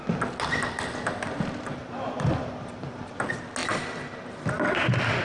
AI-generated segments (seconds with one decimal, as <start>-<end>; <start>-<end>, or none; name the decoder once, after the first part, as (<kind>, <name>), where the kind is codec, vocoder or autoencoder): 1.8-2.9 (vocoder, BigVGAN v2)